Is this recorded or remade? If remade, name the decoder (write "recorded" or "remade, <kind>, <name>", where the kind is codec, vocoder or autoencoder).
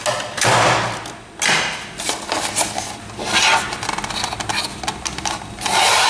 recorded